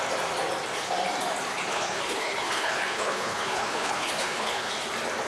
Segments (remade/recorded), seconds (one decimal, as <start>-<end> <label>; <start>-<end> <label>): 0.0-1.7 recorded; 1.7-4.7 remade; 4.7-5.3 recorded